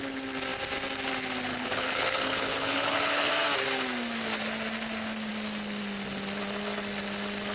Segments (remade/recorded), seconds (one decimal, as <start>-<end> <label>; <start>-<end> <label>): 0.0-1.5 recorded; 1.5-3.3 remade; 3.3-7.5 recorded